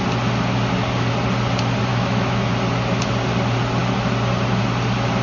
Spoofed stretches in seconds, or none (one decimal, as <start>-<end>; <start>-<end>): 1.9-2.5